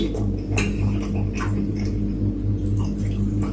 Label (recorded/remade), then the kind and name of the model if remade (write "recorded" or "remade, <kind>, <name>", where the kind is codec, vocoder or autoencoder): recorded